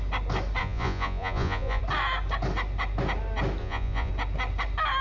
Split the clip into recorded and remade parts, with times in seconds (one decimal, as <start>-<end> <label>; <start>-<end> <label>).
0.0-0.6 recorded; 0.6-1.8 remade; 1.8-3.6 recorded; 3.6-4.1 remade; 4.1-5.0 recorded